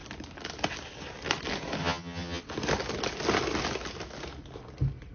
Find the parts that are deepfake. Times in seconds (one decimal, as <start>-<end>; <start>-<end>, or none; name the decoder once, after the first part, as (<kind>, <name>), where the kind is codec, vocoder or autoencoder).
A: 1.8-2.4 (vocoder, HiFi-GAN)